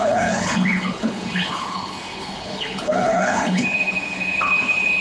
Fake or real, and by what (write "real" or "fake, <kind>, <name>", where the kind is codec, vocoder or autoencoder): fake, codec, HILCodec